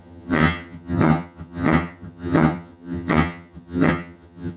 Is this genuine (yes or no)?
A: no